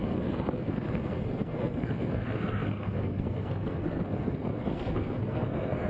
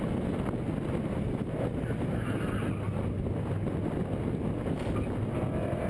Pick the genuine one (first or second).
second